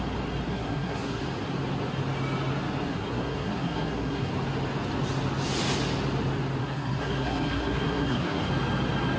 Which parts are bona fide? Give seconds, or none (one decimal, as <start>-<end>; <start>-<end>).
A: 0.0-0.5; 1.2-2.9; 4.3-6.6; 8.5-9.2